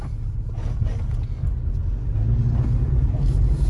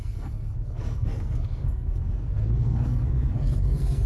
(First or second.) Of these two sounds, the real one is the first